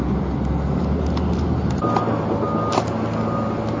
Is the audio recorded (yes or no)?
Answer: yes